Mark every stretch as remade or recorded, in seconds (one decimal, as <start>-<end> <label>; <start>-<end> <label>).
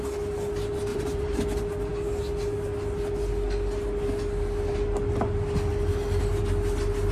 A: 0.0-0.9 recorded; 0.9-1.4 remade; 1.4-7.1 recorded